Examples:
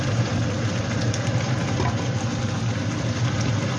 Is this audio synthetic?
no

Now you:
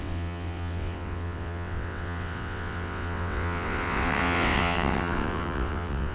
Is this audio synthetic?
yes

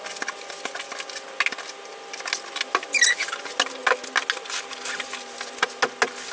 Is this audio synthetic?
no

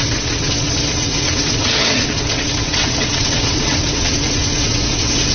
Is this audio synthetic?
yes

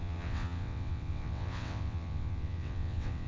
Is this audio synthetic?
yes